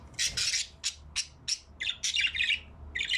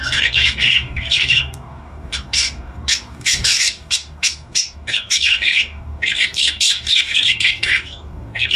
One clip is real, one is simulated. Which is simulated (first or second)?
second